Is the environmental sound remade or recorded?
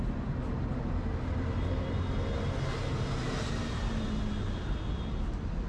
recorded